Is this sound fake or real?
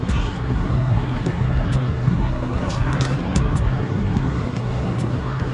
fake